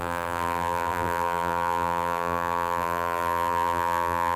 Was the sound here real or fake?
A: fake